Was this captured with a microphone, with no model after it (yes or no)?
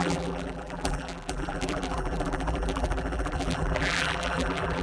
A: no